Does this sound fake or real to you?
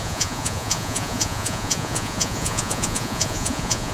fake